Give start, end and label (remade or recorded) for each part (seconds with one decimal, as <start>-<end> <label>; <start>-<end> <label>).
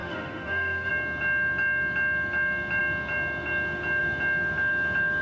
0.0-0.9 remade; 0.9-5.2 recorded